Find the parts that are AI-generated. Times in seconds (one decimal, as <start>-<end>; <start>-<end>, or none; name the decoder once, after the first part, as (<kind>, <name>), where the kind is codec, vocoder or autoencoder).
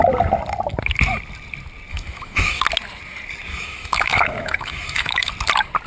1.9-2.6 (autoencoder, DAC-VAE); 3.5-5.3